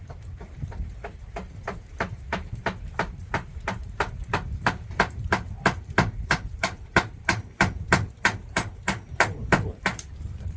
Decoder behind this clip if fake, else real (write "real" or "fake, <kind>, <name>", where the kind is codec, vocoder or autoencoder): fake, vocoder, BigVGAN v2